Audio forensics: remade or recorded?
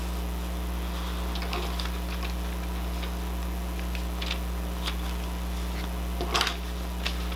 recorded